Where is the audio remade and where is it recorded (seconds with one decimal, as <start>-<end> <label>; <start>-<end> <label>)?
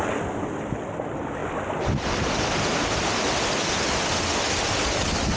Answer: 0.0-1.4 remade; 1.4-4.6 recorded; 4.6-5.4 remade